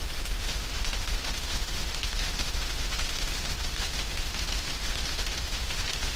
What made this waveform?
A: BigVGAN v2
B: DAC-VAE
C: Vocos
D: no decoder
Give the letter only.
B